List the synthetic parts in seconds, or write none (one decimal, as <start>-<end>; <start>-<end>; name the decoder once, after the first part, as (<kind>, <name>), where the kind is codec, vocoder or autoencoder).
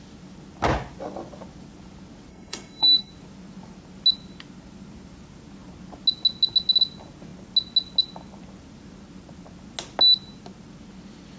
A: 2.3-3.1 (codec, SNAC)